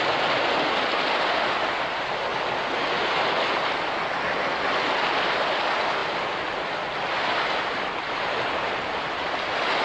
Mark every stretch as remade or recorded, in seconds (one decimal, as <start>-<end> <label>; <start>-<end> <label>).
0.0-9.8 recorded